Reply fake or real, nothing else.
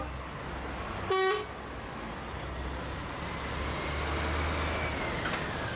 real